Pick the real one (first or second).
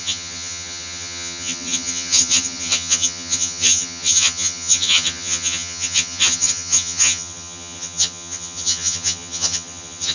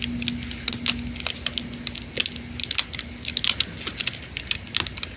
second